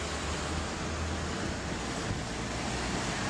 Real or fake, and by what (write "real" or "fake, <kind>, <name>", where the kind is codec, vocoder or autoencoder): real